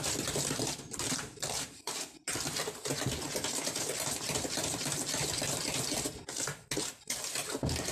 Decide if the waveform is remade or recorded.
recorded